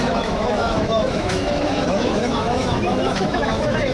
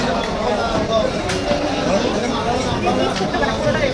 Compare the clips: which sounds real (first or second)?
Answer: second